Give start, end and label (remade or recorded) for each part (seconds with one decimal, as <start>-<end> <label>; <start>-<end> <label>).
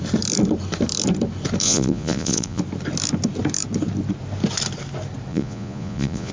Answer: 0.0-1.6 recorded; 1.6-2.6 remade; 2.6-5.3 recorded; 5.3-6.3 remade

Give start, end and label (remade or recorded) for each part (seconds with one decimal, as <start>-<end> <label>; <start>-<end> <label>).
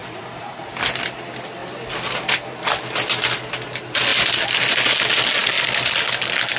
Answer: 0.0-0.7 remade; 0.7-6.6 recorded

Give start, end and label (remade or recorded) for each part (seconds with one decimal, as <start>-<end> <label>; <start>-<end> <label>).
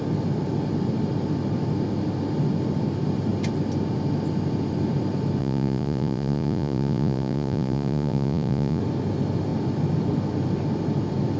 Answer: 0.0-5.4 recorded; 5.4-8.8 remade; 8.8-11.4 recorded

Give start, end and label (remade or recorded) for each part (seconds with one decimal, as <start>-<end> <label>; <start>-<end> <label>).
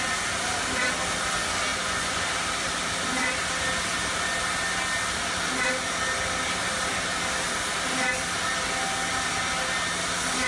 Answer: 0.0-1.7 recorded; 1.7-2.2 remade; 2.2-10.5 recorded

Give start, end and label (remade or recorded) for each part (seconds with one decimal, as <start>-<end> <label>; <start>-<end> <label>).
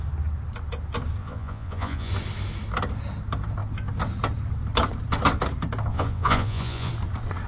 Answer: 0.0-1.2 recorded; 1.2-2.1 remade; 2.1-5.9 recorded; 5.9-6.9 remade; 6.9-7.5 recorded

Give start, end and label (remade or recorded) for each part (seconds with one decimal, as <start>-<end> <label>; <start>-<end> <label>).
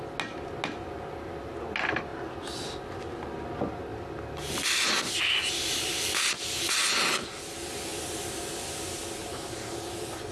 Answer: 0.0-10.3 recorded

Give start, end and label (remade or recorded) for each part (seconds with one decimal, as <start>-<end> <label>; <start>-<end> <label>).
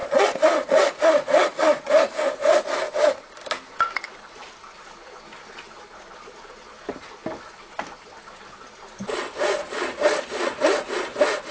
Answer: 0.0-1.9 remade; 1.9-9.6 recorded; 9.6-10.9 remade; 10.9-11.5 recorded